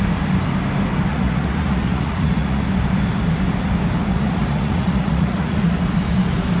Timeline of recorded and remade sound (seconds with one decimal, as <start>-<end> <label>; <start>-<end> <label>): 0.0-1.1 recorded; 1.1-2.6 remade; 2.6-4.1 recorded; 4.1-5.8 remade; 5.8-6.6 recorded